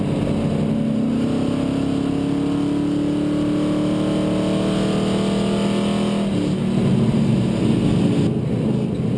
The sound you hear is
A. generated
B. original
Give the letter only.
B